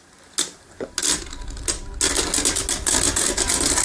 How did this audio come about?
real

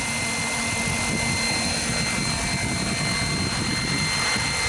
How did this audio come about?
real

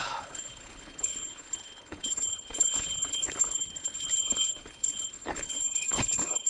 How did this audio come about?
fake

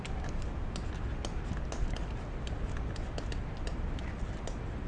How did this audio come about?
real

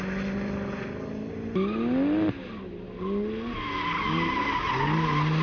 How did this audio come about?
real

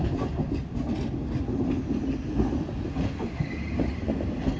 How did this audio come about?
real